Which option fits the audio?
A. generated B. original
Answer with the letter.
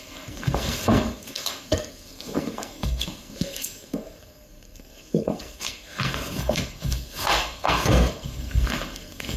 A